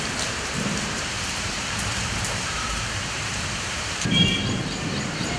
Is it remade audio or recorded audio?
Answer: remade